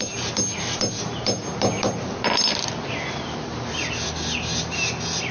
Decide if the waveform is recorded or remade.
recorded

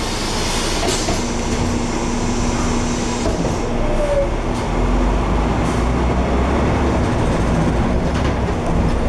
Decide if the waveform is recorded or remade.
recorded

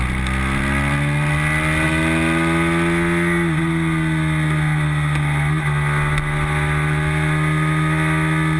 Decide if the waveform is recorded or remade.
recorded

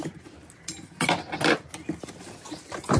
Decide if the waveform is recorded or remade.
recorded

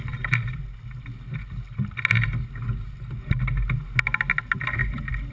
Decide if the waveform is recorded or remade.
recorded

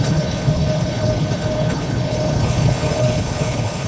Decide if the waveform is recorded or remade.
remade